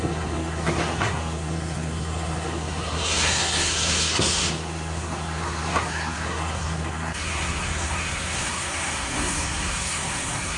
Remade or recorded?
remade